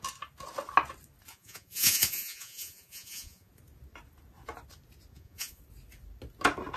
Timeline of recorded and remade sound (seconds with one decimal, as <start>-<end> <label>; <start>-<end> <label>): 0.0-1.3 recorded; 1.3-3.5 remade; 3.5-5.1 recorded; 5.1-5.6 remade; 5.6-6.8 recorded